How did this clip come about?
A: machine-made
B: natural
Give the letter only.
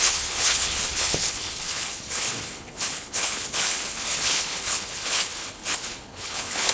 A